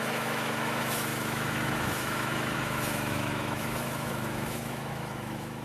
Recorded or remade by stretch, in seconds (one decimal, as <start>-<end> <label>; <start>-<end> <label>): 0.0-5.6 remade